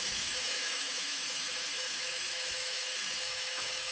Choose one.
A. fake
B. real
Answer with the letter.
A